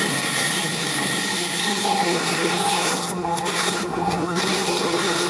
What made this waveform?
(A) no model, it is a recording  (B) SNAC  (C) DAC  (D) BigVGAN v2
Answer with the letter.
B